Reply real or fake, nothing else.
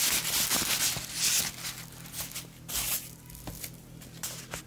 real